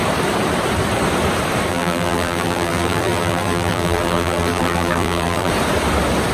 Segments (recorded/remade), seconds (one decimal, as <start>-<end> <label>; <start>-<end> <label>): 0.0-1.7 recorded; 1.7-5.5 remade; 5.5-6.3 recorded